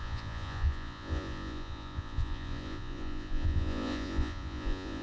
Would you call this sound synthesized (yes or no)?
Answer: yes